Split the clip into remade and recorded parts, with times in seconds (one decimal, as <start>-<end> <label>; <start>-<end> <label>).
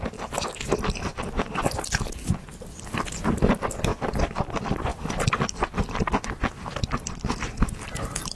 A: 0.0-4.9 recorded; 4.9-6.3 remade; 6.3-8.3 recorded